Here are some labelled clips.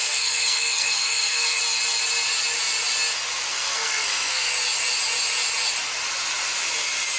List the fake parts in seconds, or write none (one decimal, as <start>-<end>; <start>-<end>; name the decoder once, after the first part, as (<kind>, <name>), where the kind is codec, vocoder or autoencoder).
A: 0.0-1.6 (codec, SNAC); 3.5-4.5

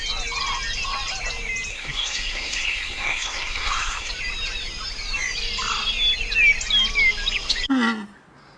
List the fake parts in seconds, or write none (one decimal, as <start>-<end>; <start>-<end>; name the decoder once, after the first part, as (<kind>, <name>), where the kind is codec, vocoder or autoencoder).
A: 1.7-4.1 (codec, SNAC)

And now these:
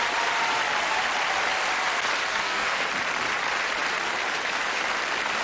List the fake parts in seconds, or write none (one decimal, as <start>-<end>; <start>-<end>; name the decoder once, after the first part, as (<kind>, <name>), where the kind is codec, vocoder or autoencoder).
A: 2.3-2.9 (codec, SNAC)

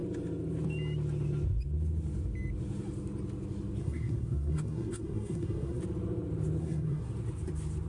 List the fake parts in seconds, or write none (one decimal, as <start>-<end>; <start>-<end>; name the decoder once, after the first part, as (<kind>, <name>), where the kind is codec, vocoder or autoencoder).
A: 3.8-5.8 (codec, SNAC); 6.6-7.1

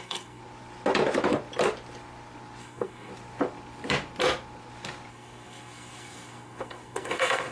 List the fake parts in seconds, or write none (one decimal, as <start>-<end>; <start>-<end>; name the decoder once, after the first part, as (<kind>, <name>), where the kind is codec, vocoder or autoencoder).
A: 0.0-0.4 (codec, SNAC); 2.6-3.1; 5.1-7.5

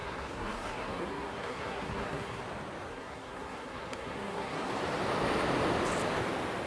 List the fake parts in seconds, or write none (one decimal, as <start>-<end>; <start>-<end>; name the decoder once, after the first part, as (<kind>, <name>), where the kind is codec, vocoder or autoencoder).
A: 0.0-2.4 (codec, SNAC); 2.9-4.7

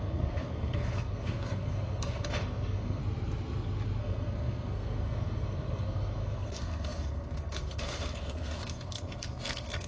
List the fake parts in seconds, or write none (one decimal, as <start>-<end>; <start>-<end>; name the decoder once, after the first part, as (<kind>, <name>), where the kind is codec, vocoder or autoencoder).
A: 0.0-3.0 (codec, SNAC); 4.0-9.9